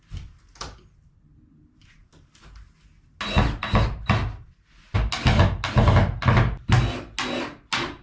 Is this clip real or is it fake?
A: real